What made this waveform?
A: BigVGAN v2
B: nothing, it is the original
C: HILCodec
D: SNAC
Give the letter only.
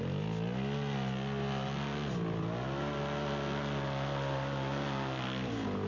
B